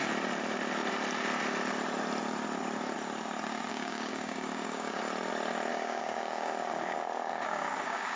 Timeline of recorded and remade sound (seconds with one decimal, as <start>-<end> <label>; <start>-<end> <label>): 0.0-3.7 recorded; 3.7-5.0 remade; 5.0-5.7 recorded; 5.7-8.2 remade